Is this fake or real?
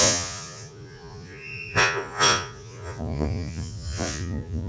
fake